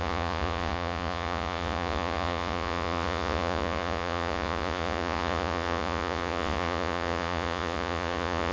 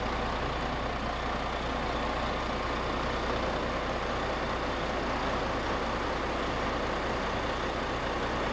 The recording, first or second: second